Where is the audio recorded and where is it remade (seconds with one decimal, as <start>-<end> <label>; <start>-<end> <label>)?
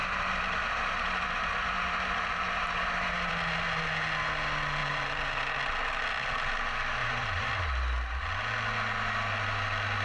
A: 0.0-3.3 remade; 3.3-4.8 recorded; 4.8-5.4 remade; 5.4-7.0 recorded; 7.0-7.5 remade; 7.5-10.0 recorded